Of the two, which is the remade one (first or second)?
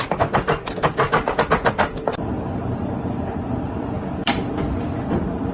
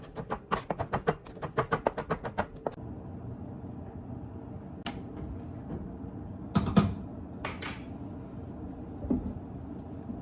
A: first